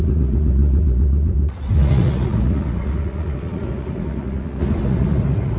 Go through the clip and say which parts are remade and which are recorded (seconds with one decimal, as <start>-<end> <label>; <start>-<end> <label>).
0.0-5.6 remade